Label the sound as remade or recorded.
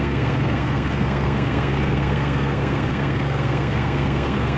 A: remade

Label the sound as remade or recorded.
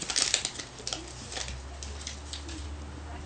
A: recorded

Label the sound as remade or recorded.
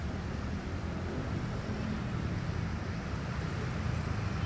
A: recorded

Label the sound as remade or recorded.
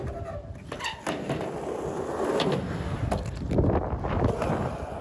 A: recorded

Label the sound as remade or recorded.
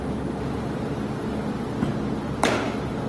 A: recorded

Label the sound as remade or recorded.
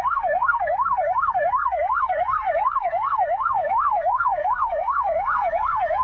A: remade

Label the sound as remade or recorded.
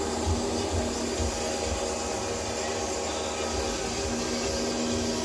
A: recorded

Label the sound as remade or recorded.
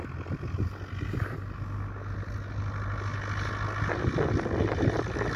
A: recorded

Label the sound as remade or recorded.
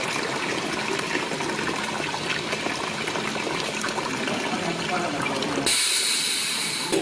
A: recorded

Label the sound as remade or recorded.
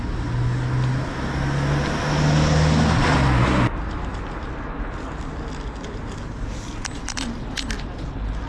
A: recorded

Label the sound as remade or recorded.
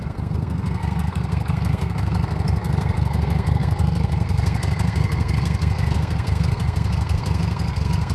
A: remade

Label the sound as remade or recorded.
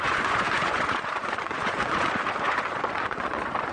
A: remade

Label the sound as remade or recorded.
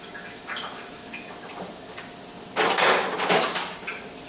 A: recorded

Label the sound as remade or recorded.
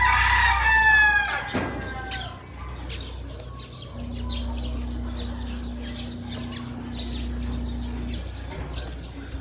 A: recorded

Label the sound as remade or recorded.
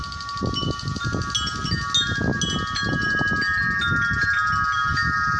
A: recorded